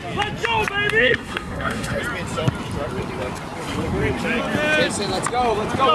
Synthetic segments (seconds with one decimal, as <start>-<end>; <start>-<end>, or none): 1.0-2.0